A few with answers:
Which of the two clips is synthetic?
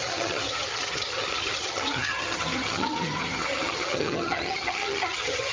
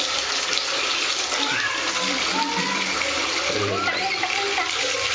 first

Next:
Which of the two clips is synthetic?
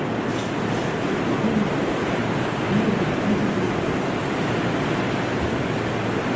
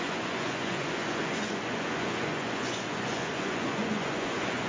second